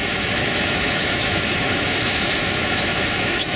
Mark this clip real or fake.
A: fake